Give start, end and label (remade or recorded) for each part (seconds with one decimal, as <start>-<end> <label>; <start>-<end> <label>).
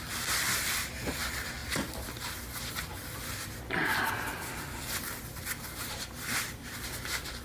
0.0-4.3 recorded; 4.3-6.9 remade; 6.9-7.4 recorded